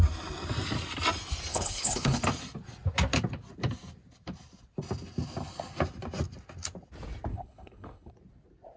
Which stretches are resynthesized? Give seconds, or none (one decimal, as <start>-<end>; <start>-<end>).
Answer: 1.5-2.2; 7.3-8.1